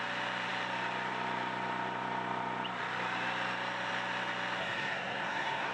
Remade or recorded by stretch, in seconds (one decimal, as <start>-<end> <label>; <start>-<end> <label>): 0.0-4.6 recorded; 4.6-5.7 remade

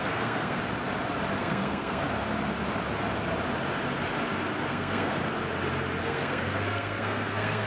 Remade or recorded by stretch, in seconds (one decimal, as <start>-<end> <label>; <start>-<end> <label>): 0.0-0.6 remade; 0.6-1.4 recorded; 1.4-2.0 remade; 2.0-4.7 recorded; 4.7-5.2 remade; 5.2-6.0 recorded; 6.0-7.7 remade

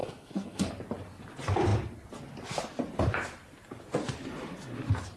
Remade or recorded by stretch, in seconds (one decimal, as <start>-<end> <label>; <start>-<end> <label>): 0.0-0.7 remade; 0.7-5.2 recorded

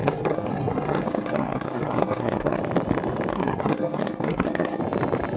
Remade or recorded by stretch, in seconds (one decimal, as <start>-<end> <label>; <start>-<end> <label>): 0.0-2.6 remade; 2.6-3.3 recorded; 3.3-4.8 remade; 4.8-5.4 recorded

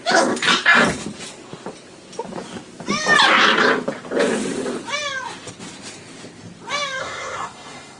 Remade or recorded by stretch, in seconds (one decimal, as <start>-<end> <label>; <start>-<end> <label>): 0.0-7.0 recorded; 7.0-8.0 remade

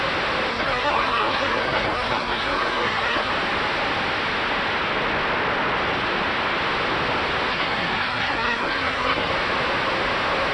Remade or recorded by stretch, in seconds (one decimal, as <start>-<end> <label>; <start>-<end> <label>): 0.0-0.5 recorded; 0.5-3.3 remade; 3.3-7.5 recorded; 7.5-9.3 remade; 9.3-10.5 recorded